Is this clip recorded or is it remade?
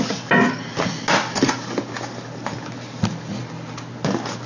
recorded